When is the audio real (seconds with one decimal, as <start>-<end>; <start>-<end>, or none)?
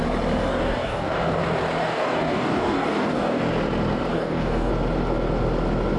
0.0-0.5; 1.4-1.8; 3.4-4.1; 4.7-6.0